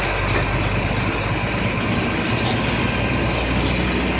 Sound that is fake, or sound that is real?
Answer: real